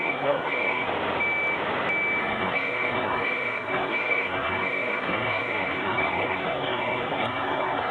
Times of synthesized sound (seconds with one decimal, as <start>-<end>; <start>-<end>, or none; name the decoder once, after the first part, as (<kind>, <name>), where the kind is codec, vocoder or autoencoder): 0.0-0.9 (codec, SNAC); 2.2-7.9